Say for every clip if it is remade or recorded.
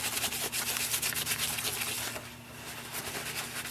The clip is recorded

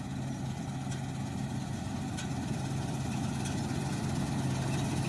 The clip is recorded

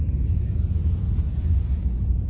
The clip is remade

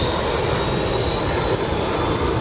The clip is recorded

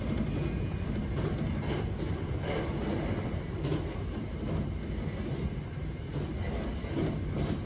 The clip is recorded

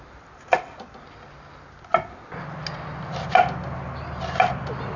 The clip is recorded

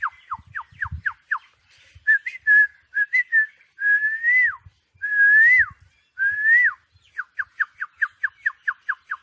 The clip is recorded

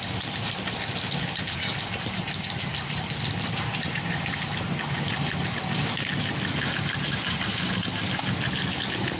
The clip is recorded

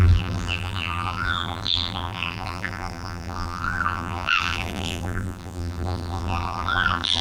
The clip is remade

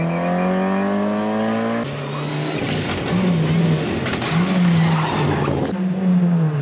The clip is recorded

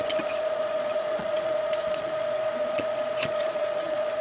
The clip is remade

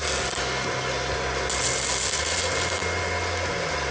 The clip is recorded